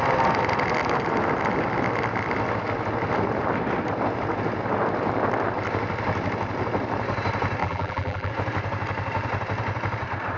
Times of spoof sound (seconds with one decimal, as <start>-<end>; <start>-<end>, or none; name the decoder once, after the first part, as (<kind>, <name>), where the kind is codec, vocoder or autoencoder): 7.6-8.3 (vocoder, BigVGAN v2)